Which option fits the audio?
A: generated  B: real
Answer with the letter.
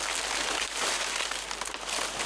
B